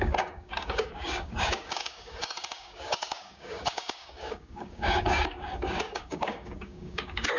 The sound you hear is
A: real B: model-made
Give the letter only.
B